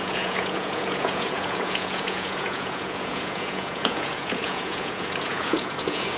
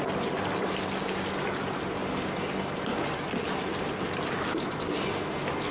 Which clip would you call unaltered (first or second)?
second